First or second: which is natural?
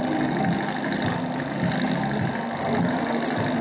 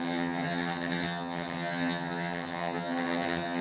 first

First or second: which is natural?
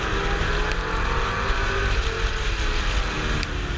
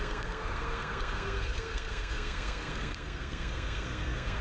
first